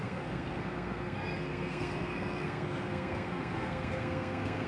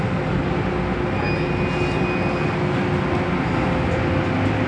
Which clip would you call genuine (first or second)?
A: second